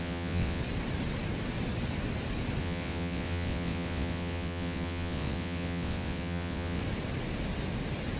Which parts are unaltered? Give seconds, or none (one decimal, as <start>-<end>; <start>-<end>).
0.6-2.6; 6.8-8.2